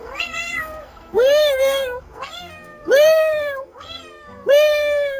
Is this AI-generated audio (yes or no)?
yes